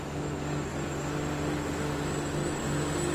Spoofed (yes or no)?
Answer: no